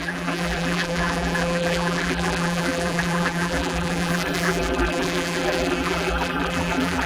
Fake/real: fake